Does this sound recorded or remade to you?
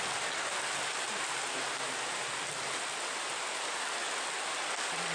recorded